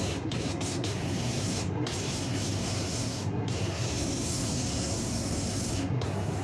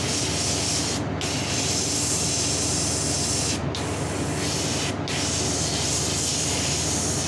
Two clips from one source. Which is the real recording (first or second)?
second